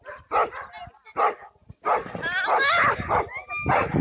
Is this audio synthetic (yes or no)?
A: no